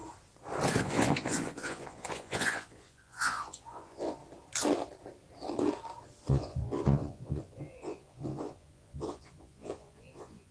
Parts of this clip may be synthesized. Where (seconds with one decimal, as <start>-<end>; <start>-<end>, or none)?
0.8-4.2; 6.3-10.5